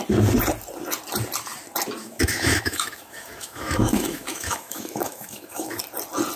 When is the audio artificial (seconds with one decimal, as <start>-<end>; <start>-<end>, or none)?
2.0-5.8